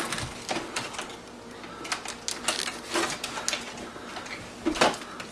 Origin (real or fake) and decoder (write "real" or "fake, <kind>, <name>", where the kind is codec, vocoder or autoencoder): real